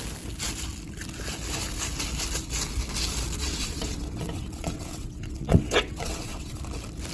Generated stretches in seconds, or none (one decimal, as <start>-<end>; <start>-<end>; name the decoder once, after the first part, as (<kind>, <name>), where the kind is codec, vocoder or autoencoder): 3.4-6.6 (vocoder, WaveNeXt)